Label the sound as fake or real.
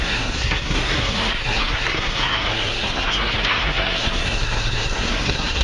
fake